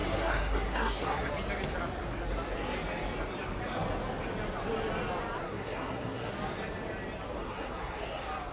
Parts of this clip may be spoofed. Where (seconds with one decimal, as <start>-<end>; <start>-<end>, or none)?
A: 0.0-1.3; 5.4-6.3; 7.4-8.0